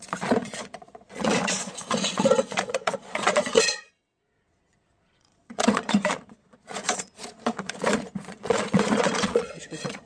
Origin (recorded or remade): remade